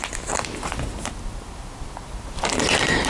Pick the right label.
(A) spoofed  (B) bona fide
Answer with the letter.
B